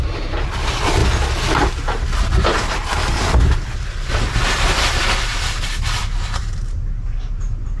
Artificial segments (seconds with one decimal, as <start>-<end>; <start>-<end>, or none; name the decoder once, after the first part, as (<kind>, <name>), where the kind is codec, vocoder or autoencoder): 0.0-1.0 (vocoder, BigVGAN v2); 2.2-5.3; 6.0-7.8